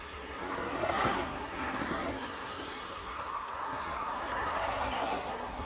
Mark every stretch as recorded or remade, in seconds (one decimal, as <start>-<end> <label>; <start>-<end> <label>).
0.0-5.7 remade